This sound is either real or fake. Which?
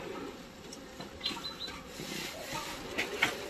real